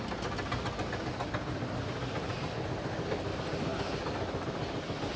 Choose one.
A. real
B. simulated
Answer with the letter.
A